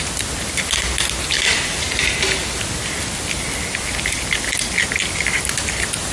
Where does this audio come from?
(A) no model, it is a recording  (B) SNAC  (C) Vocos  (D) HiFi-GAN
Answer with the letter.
A